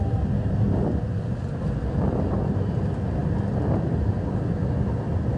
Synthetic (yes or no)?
no